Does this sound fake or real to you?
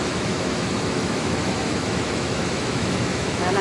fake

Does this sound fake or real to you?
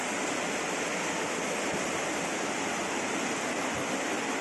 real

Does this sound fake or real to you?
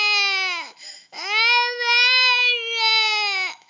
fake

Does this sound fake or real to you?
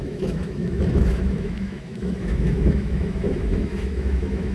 fake